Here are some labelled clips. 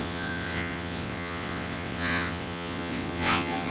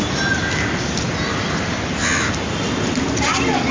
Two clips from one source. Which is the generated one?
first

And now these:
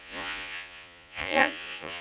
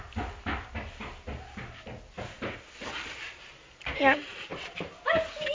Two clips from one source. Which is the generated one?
first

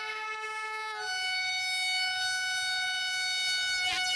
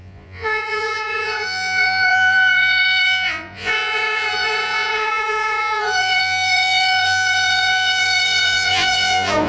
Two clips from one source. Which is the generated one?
second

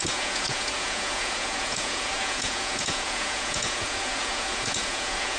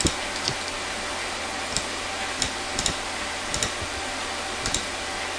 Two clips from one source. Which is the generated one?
first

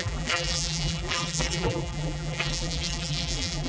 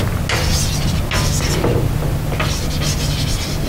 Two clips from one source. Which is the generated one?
first